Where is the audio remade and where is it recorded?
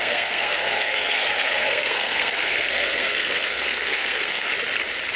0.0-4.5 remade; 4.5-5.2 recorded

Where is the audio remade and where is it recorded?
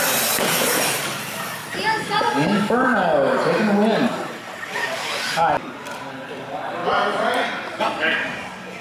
0.0-8.8 recorded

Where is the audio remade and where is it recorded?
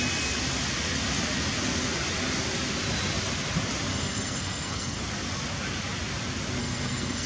0.0-3.9 recorded; 3.9-5.0 remade; 5.0-6.6 recorded; 6.6-7.3 remade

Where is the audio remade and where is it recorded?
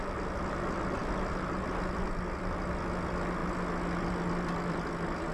0.0-5.3 recorded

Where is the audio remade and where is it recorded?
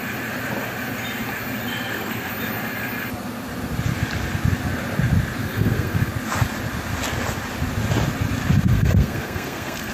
0.0-1.7 recorded; 1.7-2.3 remade; 2.3-5.4 recorded; 5.4-6.1 remade; 6.1-8.7 recorded; 8.7-9.9 remade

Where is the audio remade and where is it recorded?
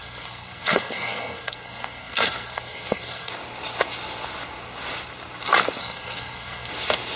0.0-3.3 remade; 3.3-5.8 recorded; 5.8-6.7 remade; 6.7-7.2 recorded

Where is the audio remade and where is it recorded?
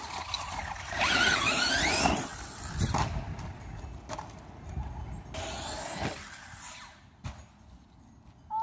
0.0-8.6 recorded